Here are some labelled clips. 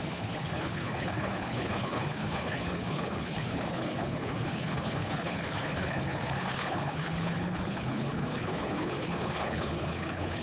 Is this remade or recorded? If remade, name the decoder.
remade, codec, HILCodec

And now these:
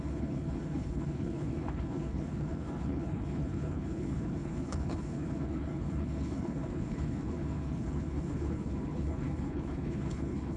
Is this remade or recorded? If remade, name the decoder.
remade, codec, HILCodec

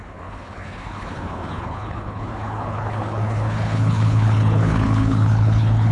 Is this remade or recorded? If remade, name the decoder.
remade, codec, HILCodec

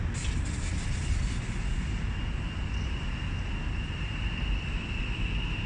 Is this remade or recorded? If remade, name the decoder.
recorded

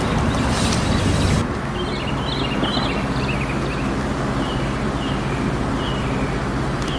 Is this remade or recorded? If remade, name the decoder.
recorded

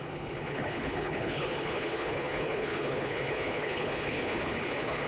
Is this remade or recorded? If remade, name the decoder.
remade, codec, HILCodec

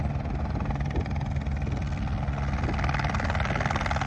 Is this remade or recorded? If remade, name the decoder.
recorded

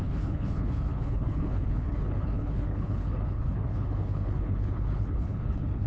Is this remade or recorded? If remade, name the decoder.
remade, codec, HILCodec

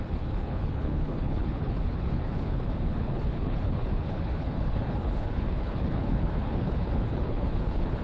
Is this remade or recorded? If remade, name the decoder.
remade, codec, HILCodec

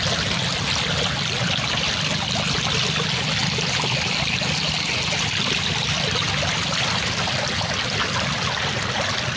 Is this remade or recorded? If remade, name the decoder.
recorded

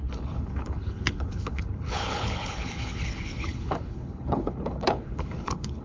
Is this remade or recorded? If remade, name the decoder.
remade, codec, HILCodec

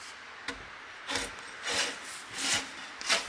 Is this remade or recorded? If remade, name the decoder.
recorded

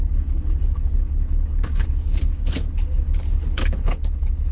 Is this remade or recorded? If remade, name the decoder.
remade, codec, HILCodec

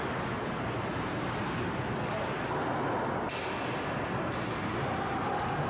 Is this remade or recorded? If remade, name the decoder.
recorded